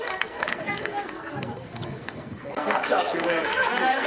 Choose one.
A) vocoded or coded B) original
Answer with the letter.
A